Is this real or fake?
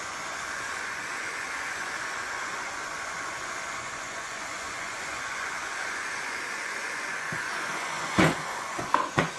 fake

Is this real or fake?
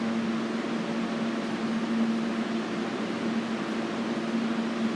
real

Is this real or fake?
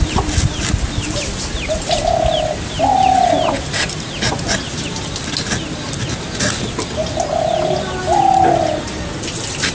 real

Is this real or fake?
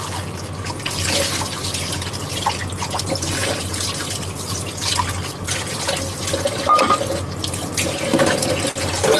real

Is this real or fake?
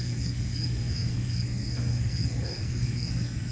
fake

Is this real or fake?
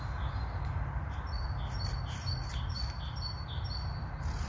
real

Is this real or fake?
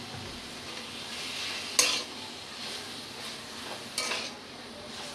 real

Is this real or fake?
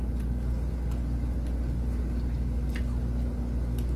real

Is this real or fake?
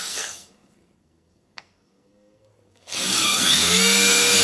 fake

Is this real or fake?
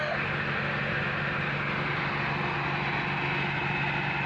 real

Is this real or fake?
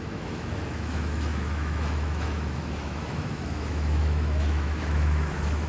fake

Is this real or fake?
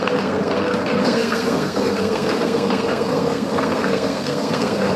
fake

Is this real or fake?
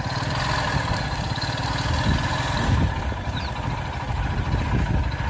real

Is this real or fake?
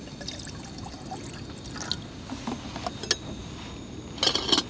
real